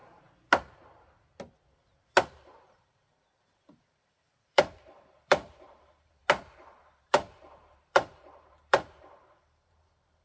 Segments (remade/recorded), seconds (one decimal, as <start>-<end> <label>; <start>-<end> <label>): 0.0-2.6 recorded; 2.6-6.2 remade; 6.2-7.0 recorded; 7.0-10.2 remade